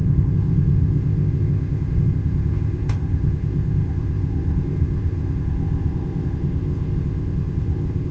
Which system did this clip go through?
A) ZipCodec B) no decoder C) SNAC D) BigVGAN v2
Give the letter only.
A